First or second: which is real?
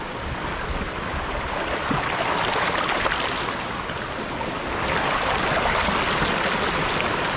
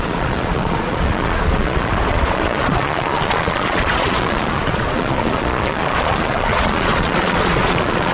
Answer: first